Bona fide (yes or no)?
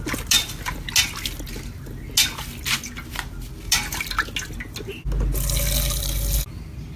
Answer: yes